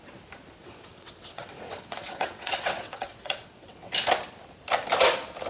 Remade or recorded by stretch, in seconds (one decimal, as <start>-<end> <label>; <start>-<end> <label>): 0.0-0.6 recorded; 0.6-3.9 remade; 3.9-5.5 recorded

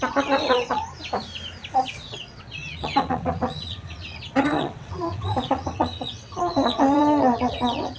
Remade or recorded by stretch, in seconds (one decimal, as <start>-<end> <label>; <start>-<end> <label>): 0.0-0.8 remade; 0.8-1.7 recorded; 1.7-8.0 remade

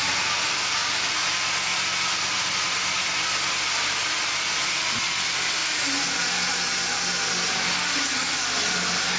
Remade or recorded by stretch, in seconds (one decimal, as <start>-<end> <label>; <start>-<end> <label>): 0.0-9.2 recorded

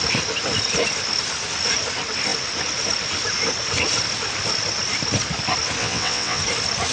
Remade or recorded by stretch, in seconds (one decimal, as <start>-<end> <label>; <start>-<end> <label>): 0.0-5.8 recorded; 5.8-6.4 remade; 6.4-6.9 recorded

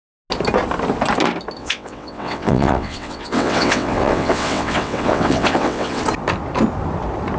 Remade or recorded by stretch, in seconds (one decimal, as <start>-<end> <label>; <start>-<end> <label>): 0.0-1.6 recorded; 1.6-6.0 remade; 6.0-7.4 recorded